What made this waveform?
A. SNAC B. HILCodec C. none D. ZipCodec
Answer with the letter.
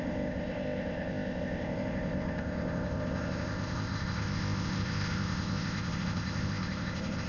D